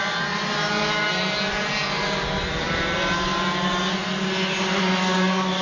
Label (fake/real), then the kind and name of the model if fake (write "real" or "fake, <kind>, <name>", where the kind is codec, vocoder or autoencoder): real